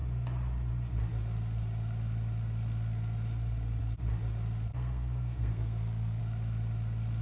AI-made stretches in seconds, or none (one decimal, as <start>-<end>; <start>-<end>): 4.7-6.2